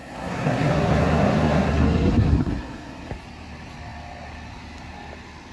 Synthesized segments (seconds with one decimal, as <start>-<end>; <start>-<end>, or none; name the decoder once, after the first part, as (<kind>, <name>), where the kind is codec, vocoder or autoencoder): 0.0-3.1 (codec, SNAC)